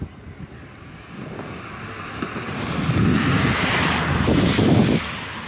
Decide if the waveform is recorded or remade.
recorded